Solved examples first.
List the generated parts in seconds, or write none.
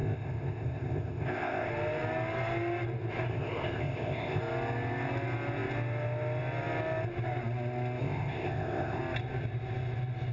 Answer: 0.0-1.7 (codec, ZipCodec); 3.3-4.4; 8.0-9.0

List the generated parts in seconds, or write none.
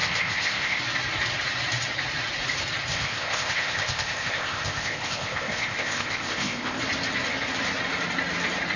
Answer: 0.0-0.8 (codec, ZipCodec); 2.9-6.8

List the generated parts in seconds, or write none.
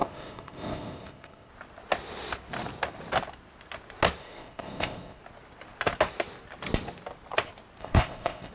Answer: 0.0-1.5 (codec, ZipCodec); 4.2-5.2; 7.8-8.5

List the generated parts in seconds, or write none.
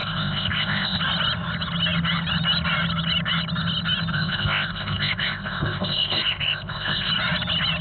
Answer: 0.0-1.0 (codec, ZipCodec); 4.1-7.1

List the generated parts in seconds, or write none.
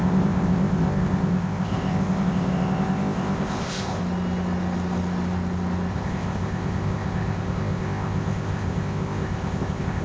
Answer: 0.0-4.0 (codec, ZipCodec); 5.9-10.0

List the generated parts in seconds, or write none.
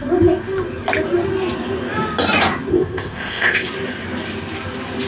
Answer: 2.7-3.7 (codec, ZipCodec)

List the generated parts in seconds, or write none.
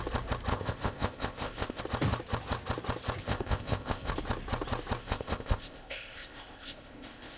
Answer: 0.5-1.8 (codec, ZipCodec); 3.2-4.1; 5.0-7.4